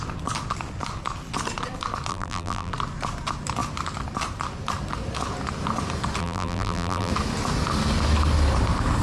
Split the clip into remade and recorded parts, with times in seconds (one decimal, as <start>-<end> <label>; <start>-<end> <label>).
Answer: 0.0-2.1 recorded; 2.1-2.7 remade; 2.7-6.2 recorded; 6.2-7.1 remade; 7.1-9.0 recorded